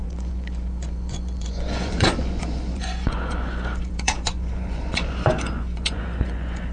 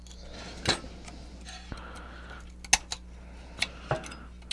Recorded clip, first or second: second